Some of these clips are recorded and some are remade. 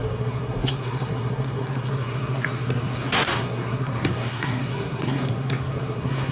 remade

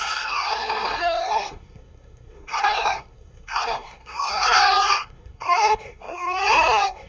remade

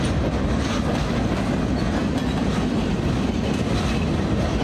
recorded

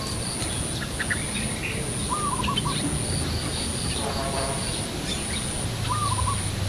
recorded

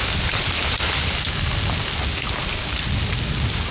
recorded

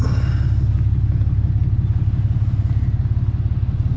recorded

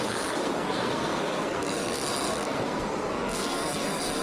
remade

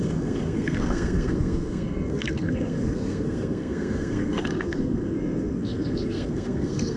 remade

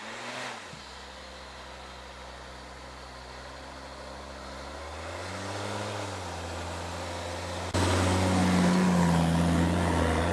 recorded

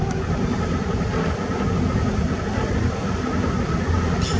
recorded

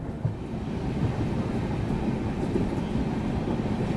recorded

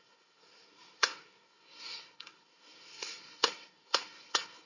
remade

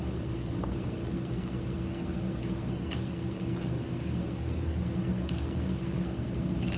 remade